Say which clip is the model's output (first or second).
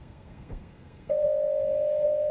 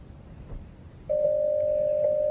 first